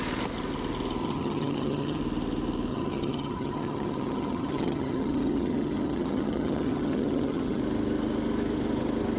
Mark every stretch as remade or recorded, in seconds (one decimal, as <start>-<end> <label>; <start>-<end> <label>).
0.0-1.0 recorded; 1.0-2.0 remade; 2.0-2.7 recorded; 2.7-7.6 remade; 7.6-9.2 recorded